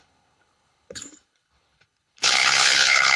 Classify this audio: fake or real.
fake